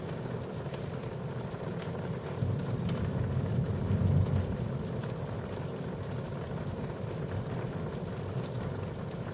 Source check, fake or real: fake